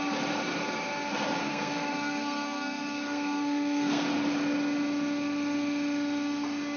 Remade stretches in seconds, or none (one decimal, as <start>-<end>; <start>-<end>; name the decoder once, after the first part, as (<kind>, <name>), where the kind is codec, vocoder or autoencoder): 1.4-4.0 (codec, SNAC)